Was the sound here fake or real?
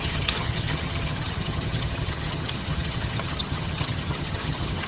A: fake